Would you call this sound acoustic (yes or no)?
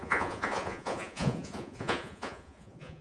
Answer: no